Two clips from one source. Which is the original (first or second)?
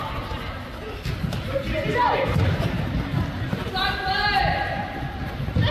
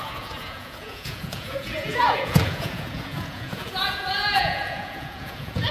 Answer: first